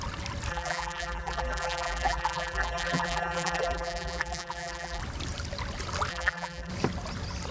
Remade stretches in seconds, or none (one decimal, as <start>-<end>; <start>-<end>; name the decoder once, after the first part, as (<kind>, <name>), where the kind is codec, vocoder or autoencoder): 0.5-5.0 (vocoder, BigVGAN v2); 6.1-6.7